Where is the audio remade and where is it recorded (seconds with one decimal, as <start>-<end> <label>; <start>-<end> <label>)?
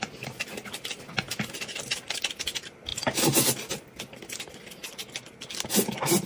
0.0-6.3 recorded